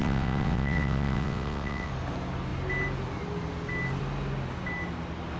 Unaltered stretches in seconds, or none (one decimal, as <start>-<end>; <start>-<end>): 1.9-5.4